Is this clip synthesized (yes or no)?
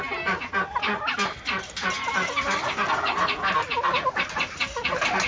no